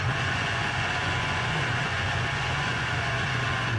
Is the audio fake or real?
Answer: fake